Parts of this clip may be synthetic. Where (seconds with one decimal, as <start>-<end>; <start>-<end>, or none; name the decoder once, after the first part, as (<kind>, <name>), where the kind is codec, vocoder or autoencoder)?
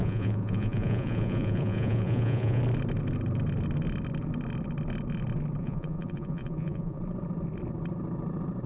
0.0-2.6 (vocoder, Vocos); 5.6-7.0